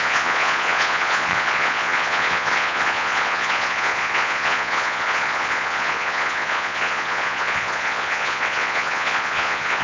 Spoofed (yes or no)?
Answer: yes